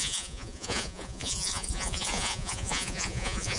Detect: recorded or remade remade